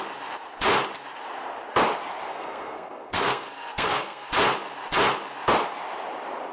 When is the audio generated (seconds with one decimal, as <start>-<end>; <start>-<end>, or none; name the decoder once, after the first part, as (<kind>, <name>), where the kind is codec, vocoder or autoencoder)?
2.3-4.3 (codec, SNAC)